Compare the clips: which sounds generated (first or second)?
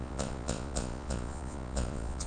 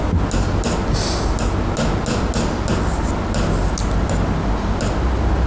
first